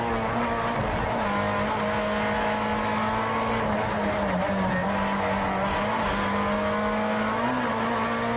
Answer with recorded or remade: recorded